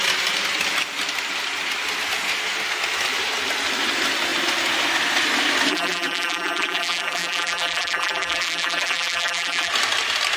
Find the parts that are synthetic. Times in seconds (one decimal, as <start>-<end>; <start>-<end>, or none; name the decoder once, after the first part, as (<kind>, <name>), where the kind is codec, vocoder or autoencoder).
5.7-9.7 (vocoder, BigVGAN v2)